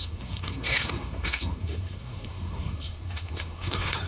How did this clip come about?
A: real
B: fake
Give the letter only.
B